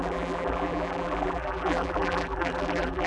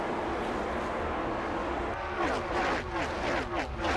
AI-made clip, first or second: first